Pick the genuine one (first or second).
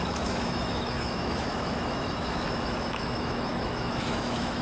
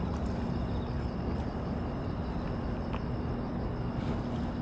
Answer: second